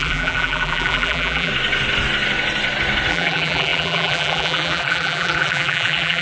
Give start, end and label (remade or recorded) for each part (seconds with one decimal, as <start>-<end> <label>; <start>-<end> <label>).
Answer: 0.0-1.5 remade; 1.5-3.1 recorded; 3.1-6.2 remade